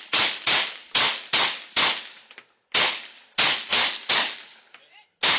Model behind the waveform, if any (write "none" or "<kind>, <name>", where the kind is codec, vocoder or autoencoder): none